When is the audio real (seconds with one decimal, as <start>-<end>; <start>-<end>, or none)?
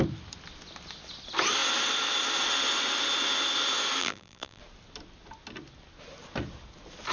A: 0.0-4.0; 4.6-7.1